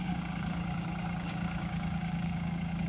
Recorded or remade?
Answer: remade